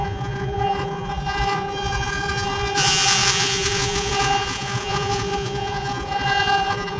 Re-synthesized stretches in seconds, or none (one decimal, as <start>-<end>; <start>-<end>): 0.0-7.0